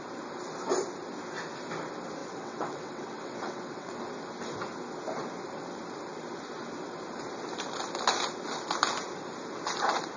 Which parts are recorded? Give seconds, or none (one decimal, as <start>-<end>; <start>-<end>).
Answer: 0.0-2.2; 4.0-10.2